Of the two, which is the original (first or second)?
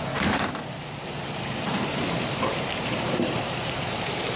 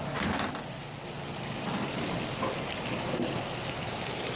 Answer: second